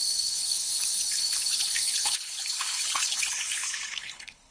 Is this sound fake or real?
fake